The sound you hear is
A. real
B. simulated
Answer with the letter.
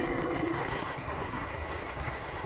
B